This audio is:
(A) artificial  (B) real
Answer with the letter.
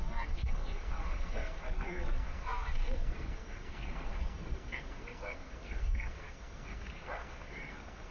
A